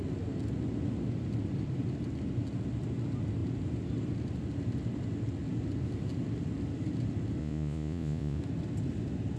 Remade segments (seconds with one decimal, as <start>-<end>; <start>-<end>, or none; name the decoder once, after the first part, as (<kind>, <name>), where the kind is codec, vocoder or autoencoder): 7.4-8.4 (vocoder, Vocos)